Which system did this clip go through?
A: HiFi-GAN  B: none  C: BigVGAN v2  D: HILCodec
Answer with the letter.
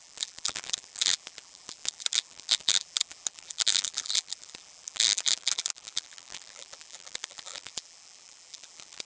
C